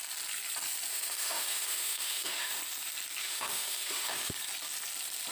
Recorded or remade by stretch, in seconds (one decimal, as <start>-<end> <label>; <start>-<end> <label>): 0.0-0.9 recorded; 0.9-2.6 remade; 2.6-3.2 recorded; 3.2-4.3 remade; 4.3-5.3 recorded